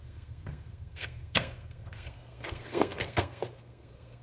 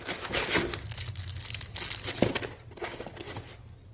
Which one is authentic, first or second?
second